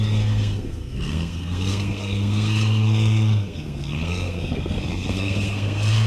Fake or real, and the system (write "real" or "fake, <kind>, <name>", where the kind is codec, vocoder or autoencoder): fake, codec, SNAC